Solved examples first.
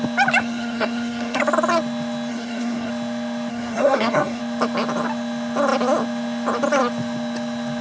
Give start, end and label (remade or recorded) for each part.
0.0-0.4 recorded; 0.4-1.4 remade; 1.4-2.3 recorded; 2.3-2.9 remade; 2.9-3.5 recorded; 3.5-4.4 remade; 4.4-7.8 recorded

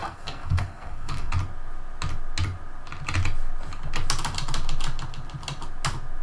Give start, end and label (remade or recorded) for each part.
0.0-1.3 remade; 1.3-6.2 recorded